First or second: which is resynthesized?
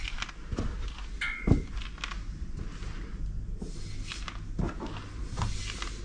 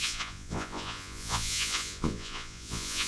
second